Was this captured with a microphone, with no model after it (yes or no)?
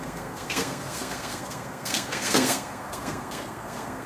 no